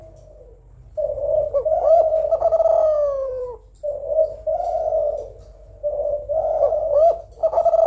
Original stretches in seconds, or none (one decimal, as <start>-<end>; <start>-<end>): 0.0-3.2; 4.1-7.4